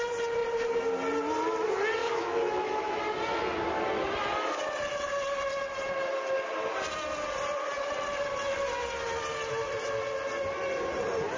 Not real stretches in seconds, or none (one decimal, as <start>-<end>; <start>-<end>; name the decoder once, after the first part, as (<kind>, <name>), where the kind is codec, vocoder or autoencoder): 2.0-3.0 (autoencoder, DAC-VAE)